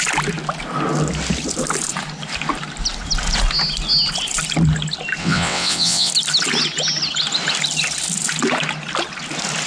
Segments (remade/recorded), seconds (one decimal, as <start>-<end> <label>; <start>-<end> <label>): 0.0-5.2 recorded; 5.2-6.1 remade; 6.1-9.7 recorded